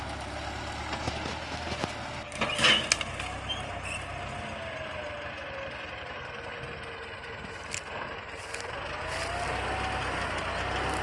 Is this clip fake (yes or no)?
no